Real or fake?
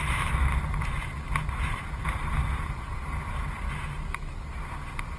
real